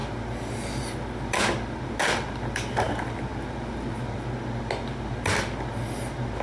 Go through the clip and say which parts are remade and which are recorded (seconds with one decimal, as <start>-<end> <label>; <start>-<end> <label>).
0.0-6.4 recorded